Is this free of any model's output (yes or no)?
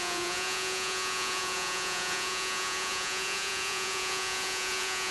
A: no